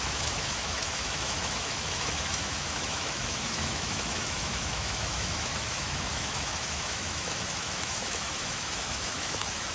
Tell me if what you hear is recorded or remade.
remade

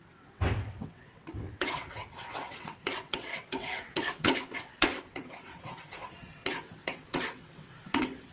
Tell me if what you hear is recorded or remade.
remade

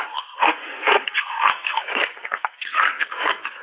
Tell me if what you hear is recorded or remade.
remade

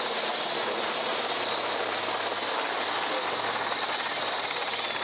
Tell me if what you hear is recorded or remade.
recorded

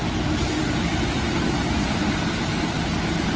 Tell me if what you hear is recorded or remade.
recorded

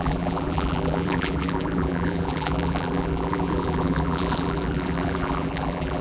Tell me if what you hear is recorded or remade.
remade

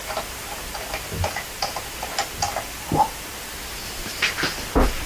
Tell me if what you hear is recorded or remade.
recorded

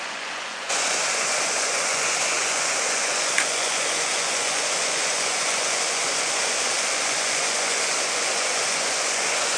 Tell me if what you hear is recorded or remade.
remade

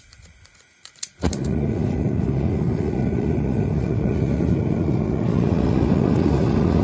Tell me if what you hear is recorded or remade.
remade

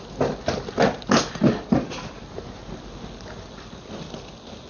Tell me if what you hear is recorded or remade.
recorded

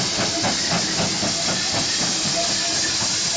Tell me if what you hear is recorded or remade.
recorded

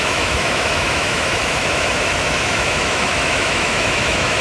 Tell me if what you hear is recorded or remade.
remade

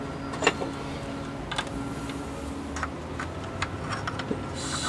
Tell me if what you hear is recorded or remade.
recorded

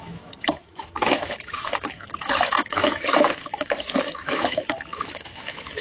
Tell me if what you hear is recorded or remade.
remade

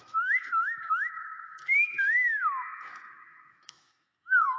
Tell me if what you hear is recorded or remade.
remade